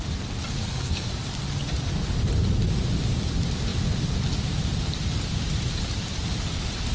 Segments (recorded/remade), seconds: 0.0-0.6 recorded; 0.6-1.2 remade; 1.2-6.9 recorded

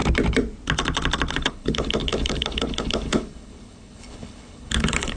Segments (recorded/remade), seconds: 0.0-1.3 recorded; 1.3-5.2 remade

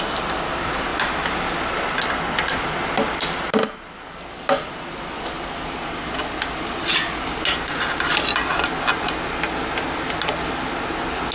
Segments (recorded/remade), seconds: 0.0-11.3 recorded

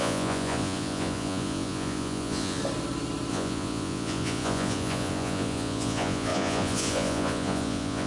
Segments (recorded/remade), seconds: 0.0-2.6 remade; 2.6-3.3 recorded; 3.3-8.1 remade

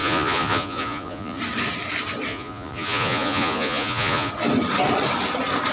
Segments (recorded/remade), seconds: 0.0-1.4 remade; 1.4-2.3 recorded; 2.3-4.3 remade; 4.3-5.7 recorded

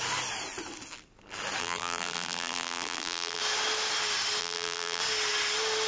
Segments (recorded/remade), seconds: 0.0-1.6 recorded; 1.6-3.4 remade; 3.4-4.4 recorded; 4.4-5.0 remade; 5.0-5.9 recorded